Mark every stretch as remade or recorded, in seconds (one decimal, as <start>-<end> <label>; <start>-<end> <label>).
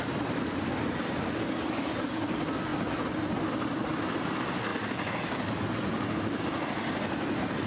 0.0-7.7 recorded